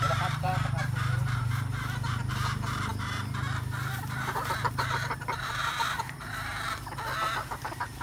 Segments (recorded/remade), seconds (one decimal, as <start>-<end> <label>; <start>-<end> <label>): 0.0-6.5 remade; 6.5-7.2 recorded; 7.2-8.0 remade